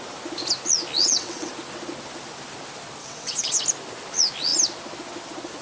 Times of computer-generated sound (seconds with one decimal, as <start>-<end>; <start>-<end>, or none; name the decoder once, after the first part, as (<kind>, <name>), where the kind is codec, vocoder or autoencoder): 1.0-1.5 (vocoder, WaveNeXt); 3.0-3.6